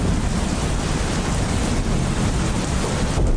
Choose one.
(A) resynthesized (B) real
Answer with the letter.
B